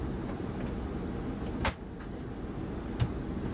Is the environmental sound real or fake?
real